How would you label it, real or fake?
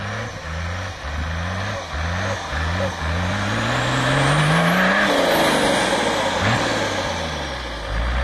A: real